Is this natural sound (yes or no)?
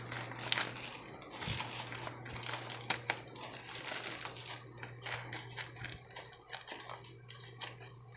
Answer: yes